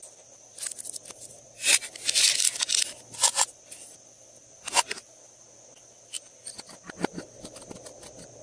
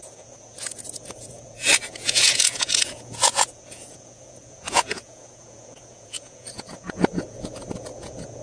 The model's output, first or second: second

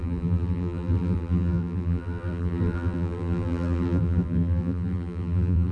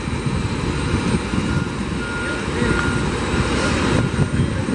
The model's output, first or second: first